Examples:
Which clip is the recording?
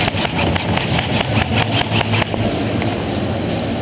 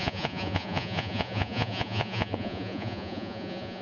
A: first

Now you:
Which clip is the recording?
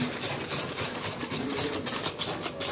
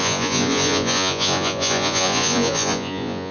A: first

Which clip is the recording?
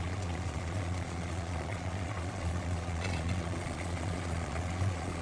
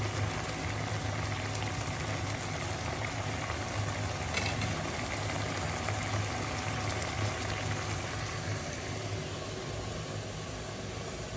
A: second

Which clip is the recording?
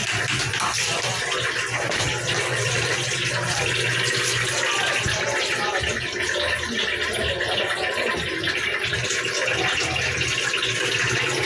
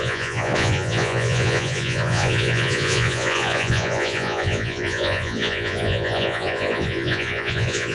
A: first